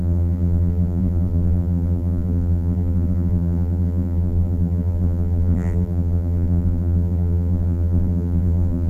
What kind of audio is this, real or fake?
fake